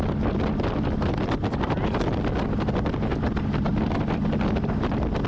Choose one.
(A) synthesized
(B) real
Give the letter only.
B